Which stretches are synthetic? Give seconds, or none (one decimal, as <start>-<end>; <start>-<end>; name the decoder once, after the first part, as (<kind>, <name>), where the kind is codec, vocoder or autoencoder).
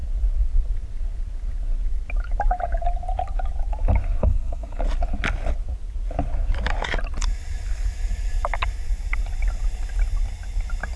4.2-4.8 (codec, SNAC)